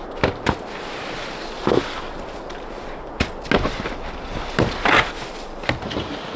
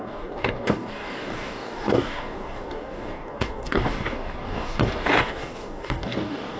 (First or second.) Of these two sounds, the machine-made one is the second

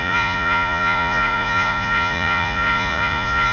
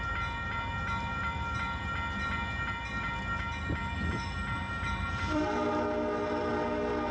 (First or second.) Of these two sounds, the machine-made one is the first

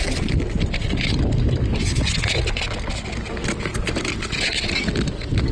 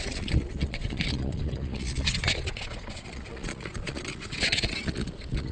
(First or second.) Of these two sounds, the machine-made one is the second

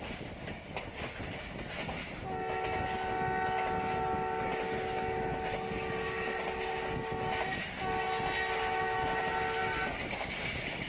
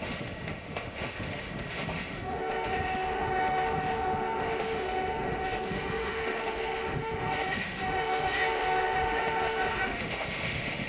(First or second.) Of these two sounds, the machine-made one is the second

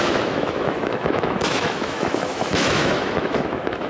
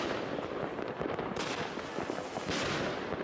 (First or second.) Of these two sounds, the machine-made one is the first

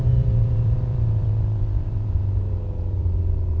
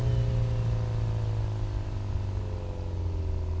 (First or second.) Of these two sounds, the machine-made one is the first